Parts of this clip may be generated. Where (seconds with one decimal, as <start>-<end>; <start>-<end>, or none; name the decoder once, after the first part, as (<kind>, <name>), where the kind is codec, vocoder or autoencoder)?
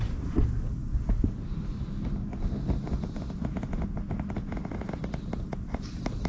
none